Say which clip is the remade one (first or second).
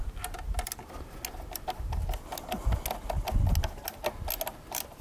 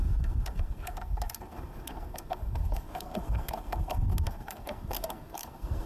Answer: second